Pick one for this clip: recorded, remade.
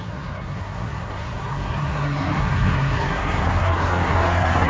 remade